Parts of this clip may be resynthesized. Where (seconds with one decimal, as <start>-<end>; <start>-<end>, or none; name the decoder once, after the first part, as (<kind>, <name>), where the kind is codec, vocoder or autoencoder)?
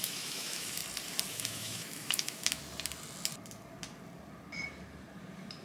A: 0.0-0.8 (autoencoder, DAC-VAE); 1.3-2.6